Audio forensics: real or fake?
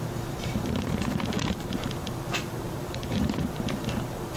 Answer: fake